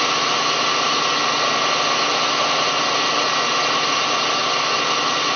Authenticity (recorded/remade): recorded